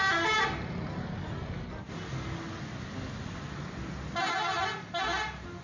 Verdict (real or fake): real